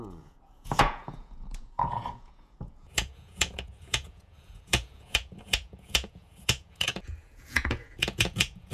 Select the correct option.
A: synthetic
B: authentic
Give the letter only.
A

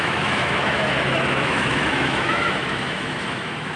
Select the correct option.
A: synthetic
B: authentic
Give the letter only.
A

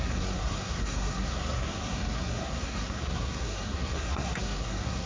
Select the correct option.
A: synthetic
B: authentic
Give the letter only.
A